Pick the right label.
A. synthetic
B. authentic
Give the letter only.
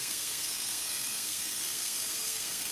A